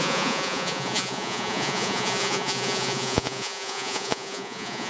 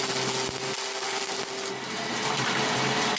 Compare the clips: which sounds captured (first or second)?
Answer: second